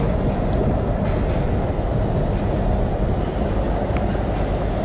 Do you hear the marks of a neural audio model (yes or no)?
no